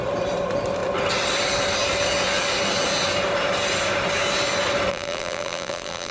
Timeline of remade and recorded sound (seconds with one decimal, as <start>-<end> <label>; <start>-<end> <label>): 0.0-4.9 recorded; 4.9-6.1 remade